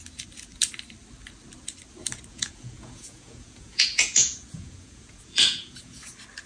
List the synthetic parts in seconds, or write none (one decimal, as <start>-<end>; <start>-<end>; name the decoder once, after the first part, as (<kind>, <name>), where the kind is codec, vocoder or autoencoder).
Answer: 2.3-6.1 (vocoder, Vocos)